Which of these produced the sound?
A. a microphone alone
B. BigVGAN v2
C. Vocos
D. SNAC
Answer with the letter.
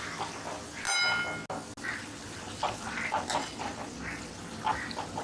A